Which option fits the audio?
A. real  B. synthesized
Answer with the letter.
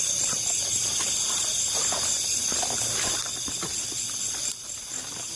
B